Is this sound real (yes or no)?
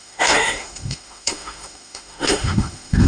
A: no